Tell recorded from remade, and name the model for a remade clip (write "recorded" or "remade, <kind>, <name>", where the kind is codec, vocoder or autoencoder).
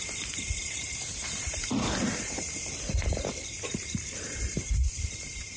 remade, vocoder, BigVGAN v2